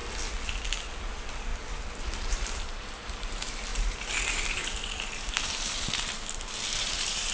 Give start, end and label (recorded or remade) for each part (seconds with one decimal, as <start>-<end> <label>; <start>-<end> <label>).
0.0-1.1 recorded; 1.1-1.5 remade; 1.5-2.2 recorded; 2.2-7.3 remade